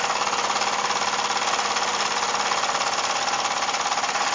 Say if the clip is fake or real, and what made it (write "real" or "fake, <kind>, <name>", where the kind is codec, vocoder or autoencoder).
real